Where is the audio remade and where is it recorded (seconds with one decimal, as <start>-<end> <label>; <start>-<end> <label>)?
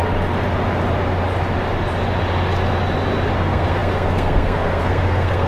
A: 0.0-3.3 recorded; 3.3-5.5 remade